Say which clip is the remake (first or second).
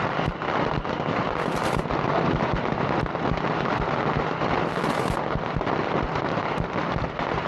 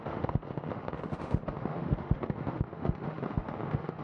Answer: second